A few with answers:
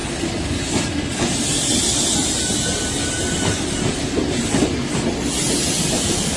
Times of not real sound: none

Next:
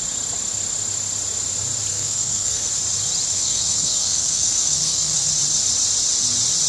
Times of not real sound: 1.9-2.7; 3.3-5.3

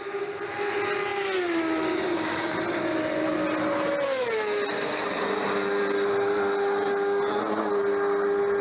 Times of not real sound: none